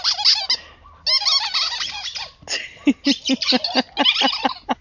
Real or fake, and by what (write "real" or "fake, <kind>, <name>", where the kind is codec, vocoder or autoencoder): real